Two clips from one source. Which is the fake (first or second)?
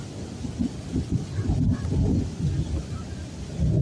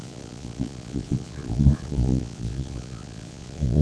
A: second